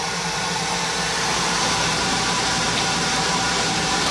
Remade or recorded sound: remade